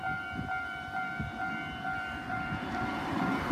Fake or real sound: fake